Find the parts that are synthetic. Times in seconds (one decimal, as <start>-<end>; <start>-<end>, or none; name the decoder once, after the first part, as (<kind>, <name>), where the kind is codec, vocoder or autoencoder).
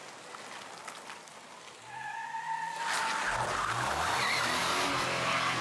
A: none